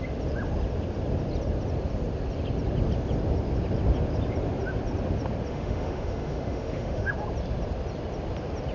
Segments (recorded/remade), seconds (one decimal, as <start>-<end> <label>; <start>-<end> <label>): 0.0-5.5 recorded; 5.5-7.1 remade; 7.1-8.7 recorded